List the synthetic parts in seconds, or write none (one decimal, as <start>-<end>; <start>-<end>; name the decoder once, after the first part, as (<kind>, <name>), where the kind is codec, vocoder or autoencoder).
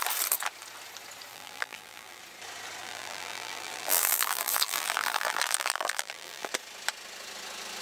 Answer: 1.3-2.2 (vocoder, BigVGAN v2); 2.8-6.5